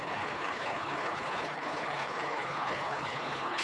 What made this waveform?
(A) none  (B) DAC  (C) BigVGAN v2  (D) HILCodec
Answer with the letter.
D